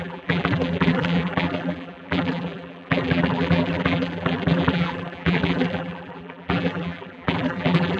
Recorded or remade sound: remade